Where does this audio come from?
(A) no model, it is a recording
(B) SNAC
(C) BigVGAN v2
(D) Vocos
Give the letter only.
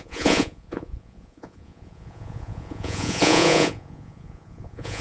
D